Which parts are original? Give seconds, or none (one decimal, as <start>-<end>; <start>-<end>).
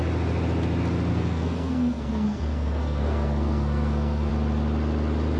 0.0-1.1; 4.3-5.4